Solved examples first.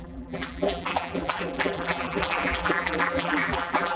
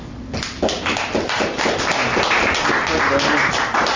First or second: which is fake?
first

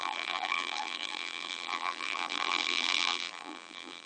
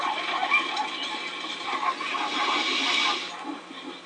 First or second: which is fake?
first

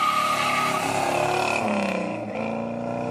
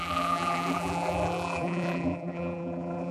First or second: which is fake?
second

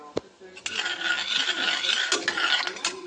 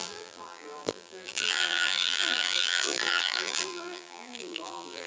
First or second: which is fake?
second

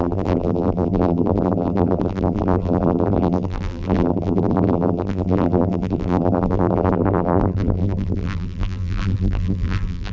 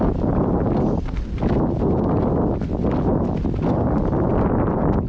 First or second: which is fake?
first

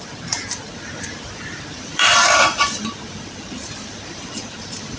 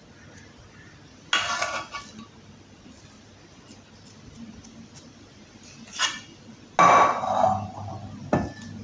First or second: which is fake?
first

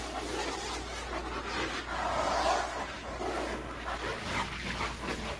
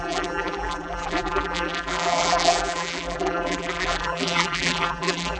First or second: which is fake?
second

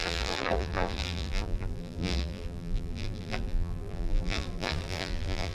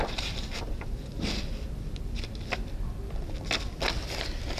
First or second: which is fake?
first